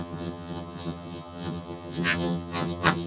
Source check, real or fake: fake